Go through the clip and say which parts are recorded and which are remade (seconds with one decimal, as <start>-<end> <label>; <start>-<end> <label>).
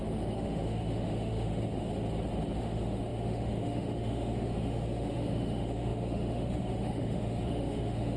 0.0-1.9 remade; 1.9-2.6 recorded; 2.6-8.2 remade